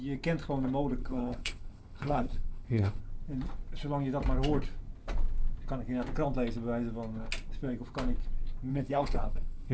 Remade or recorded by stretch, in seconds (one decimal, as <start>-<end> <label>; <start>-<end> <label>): 0.0-1.0 recorded; 1.0-3.0 remade; 3.0-8.7 recorded; 8.7-9.7 remade